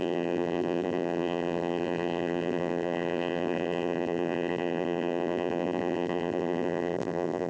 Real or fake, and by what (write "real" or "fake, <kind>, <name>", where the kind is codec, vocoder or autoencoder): fake, vocoder, BigVGAN v2